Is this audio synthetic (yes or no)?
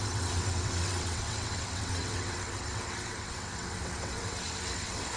yes